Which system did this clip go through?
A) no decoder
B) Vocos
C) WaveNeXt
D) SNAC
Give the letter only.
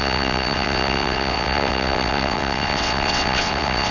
C